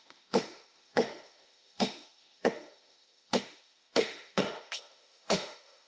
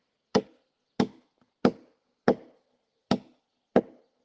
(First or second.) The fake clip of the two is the first